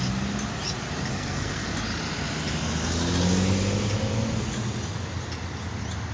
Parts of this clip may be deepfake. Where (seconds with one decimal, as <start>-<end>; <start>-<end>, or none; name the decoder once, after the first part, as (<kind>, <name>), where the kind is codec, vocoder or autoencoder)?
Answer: 1.1-1.7 (codec, SNAC)